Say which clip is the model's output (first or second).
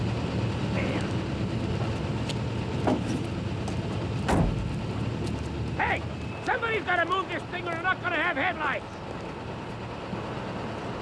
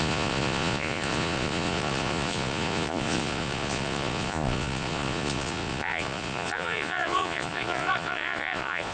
second